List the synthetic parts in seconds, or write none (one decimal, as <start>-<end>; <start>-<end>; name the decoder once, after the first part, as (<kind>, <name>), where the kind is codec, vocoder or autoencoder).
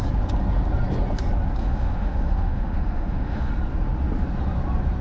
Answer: 1.6-3.5 (autoencoder, DAC-VAE)